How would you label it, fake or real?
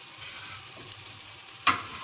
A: fake